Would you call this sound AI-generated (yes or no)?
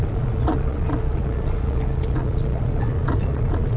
yes